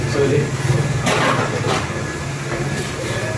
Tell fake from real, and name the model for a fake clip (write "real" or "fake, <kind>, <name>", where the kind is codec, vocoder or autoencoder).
real